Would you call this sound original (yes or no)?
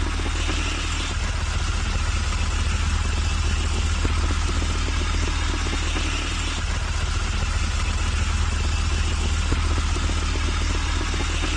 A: yes